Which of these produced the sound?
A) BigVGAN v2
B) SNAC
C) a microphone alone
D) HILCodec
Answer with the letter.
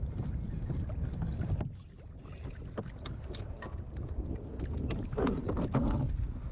C